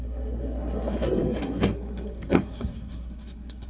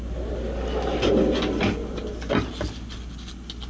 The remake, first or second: first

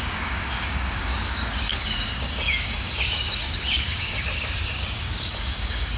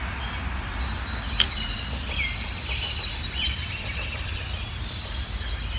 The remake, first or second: first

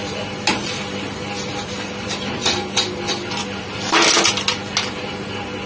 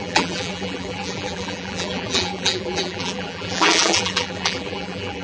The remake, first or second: second